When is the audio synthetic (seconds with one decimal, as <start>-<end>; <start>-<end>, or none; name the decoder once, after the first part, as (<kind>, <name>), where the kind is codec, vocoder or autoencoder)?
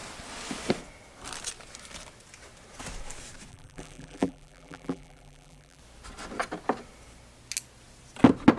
3.5-5.8 (vocoder, BigVGAN v2)